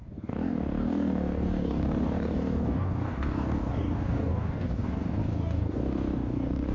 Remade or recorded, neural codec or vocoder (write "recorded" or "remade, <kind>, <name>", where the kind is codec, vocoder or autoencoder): remade, codec, DAC